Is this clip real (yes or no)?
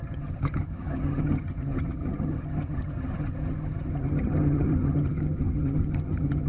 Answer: no